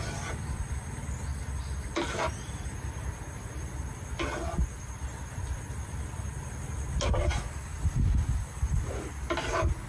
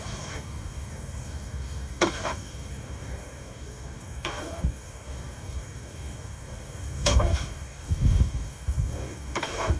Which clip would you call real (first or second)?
first